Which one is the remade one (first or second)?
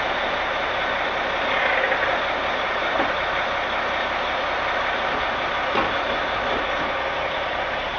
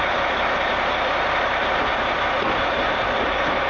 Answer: second